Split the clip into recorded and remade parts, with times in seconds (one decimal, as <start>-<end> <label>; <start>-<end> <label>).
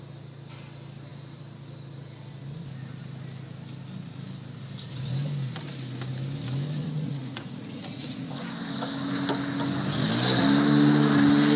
0.0-6.8 recorded; 6.8-8.3 remade; 8.3-11.6 recorded